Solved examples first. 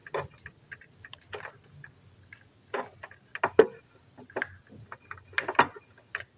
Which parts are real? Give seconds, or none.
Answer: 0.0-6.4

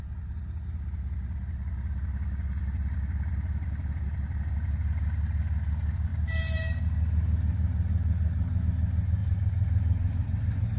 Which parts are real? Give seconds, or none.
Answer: 0.0-6.1; 8.6-9.2

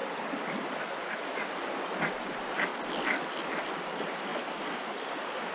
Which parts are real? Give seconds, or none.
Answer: 0.0-5.5

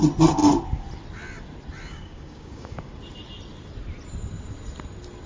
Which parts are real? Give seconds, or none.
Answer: 0.0-1.9; 2.9-5.3

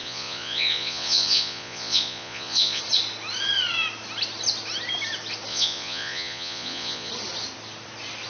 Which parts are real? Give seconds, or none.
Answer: 2.8-5.5; 7.1-8.3